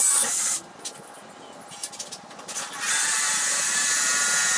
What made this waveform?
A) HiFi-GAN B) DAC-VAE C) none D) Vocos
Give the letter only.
C